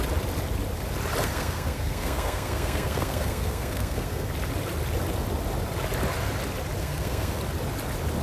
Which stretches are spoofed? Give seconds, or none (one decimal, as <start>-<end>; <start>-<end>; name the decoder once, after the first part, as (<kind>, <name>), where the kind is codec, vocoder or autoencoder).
1.2-4.3 (codec, SNAC); 6.8-7.4